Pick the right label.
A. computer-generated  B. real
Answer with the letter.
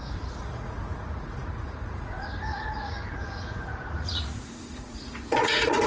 A